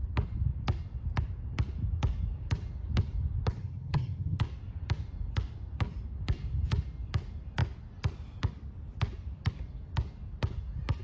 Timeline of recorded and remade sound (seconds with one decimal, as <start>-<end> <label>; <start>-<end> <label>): 0.0-3.6 recorded; 3.6-4.4 remade; 4.4-11.0 recorded